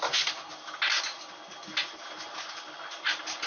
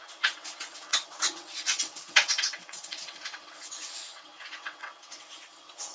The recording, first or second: first